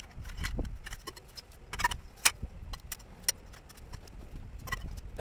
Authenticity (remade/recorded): recorded